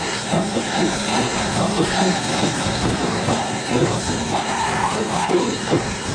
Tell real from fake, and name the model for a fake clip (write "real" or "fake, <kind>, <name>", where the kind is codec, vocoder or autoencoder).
fake, codec, SNAC